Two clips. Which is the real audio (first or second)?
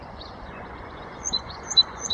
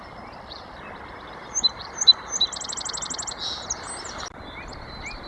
second